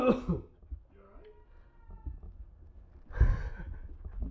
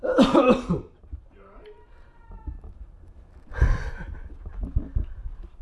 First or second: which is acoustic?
first